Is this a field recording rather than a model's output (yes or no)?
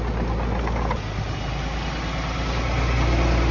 yes